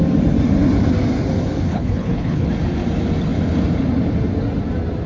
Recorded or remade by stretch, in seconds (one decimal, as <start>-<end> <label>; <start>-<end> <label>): 0.0-1.7 recorded; 1.7-2.5 remade; 2.5-5.1 recorded